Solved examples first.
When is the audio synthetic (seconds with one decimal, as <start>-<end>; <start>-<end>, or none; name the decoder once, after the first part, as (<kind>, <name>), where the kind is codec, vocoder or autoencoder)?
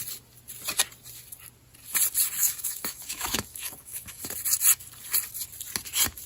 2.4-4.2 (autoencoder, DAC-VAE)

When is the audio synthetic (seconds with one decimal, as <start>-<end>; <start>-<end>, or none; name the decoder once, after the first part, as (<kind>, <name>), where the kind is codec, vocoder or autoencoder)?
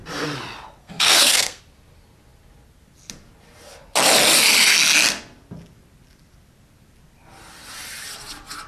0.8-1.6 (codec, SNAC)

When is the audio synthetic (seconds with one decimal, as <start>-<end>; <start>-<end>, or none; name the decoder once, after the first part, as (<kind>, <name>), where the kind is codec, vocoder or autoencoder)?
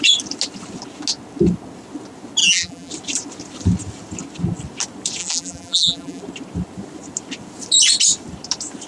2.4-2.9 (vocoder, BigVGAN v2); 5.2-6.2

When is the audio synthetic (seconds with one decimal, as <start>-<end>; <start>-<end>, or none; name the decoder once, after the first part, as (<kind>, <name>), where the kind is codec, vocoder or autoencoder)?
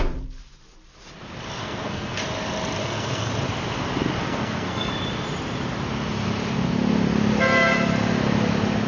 1.6-2.2 (codec, SNAC); 2.8-3.3; 4.2-4.9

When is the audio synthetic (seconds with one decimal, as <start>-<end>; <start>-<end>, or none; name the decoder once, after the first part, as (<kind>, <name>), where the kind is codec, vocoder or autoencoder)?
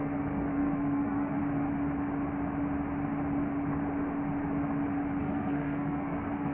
0.0-1.4 (codec, SNAC); 5.2-6.5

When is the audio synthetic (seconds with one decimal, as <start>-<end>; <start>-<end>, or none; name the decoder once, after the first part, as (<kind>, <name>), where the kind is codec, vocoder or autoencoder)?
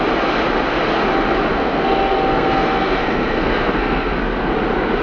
1.5-4.5 (codec, SNAC)